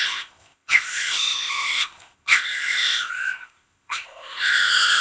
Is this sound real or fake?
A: fake